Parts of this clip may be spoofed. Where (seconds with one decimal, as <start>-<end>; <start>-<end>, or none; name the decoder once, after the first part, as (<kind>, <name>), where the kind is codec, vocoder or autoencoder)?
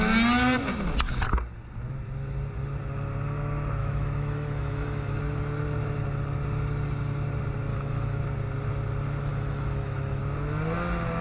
3.8-5.2 (autoencoder, DAC-VAE); 7.7-8.2; 9.3-10.2